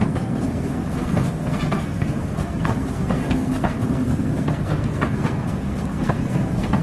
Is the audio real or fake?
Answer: fake